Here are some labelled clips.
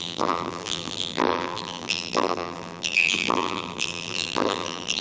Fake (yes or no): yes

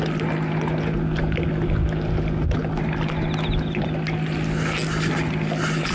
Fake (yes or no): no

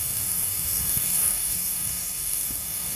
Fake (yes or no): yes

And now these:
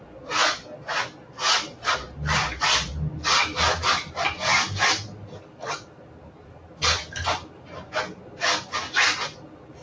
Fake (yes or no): no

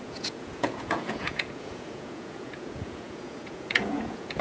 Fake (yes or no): yes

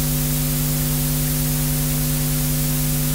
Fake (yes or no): no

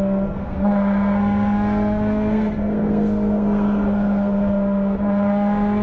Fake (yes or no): yes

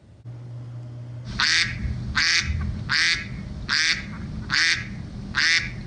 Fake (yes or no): no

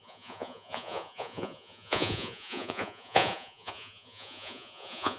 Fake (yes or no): yes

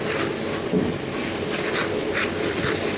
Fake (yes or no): no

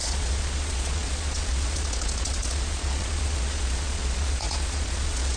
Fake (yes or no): yes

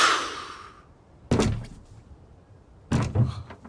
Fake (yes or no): no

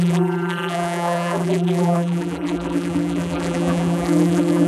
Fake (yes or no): yes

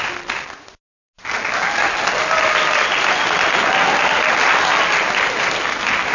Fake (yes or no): no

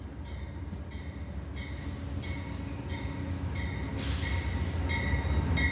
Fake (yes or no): no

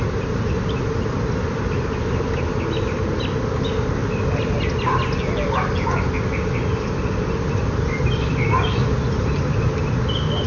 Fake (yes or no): no